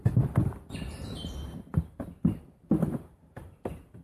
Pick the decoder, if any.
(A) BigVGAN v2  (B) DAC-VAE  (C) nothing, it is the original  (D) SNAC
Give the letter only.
C